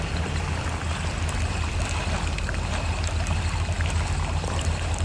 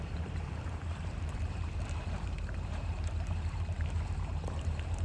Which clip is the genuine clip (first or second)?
first